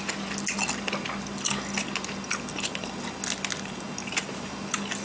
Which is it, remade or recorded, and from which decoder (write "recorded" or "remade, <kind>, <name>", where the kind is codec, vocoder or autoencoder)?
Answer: recorded